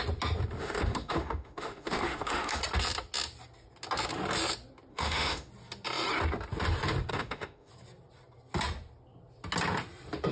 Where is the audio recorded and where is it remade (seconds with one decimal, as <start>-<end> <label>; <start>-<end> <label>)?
0.0-0.6 recorded; 0.6-2.6 remade; 2.6-4.9 recorded; 4.9-5.5 remade; 5.5-7.1 recorded; 7.1-7.7 remade; 7.7-10.3 recorded

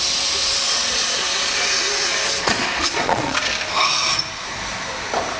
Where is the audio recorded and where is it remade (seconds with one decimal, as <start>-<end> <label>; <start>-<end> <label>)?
0.0-0.4 recorded; 0.4-1.6 remade; 1.6-2.1 recorded; 2.1-3.5 remade; 3.5-5.4 recorded

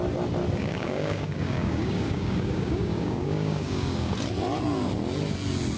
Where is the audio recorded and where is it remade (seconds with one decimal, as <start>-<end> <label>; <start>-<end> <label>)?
0.0-0.6 recorded; 0.6-4.1 remade; 4.1-5.8 recorded

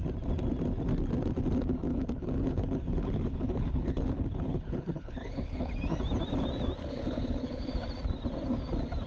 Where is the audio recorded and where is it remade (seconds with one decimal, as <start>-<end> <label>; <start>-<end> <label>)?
0.0-1.9 recorded; 1.9-5.7 remade; 5.7-6.8 recorded; 6.8-7.7 remade; 7.7-9.1 recorded

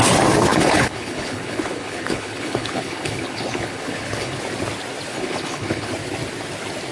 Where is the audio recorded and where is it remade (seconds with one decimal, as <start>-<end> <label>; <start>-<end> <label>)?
0.0-0.5 recorded; 0.5-4.4 remade; 4.4-5.1 recorded; 5.1-5.9 remade; 5.9-6.9 recorded

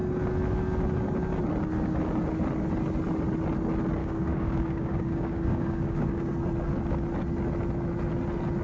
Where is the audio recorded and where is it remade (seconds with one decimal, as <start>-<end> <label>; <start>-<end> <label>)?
0.0-4.0 recorded; 4.0-6.3 remade; 6.3-8.6 recorded

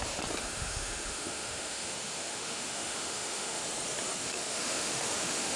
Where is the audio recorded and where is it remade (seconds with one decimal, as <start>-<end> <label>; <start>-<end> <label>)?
0.0-0.4 recorded; 0.4-3.6 remade; 3.6-4.2 recorded; 4.2-5.6 remade